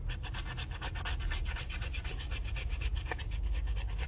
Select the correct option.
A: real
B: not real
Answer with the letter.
A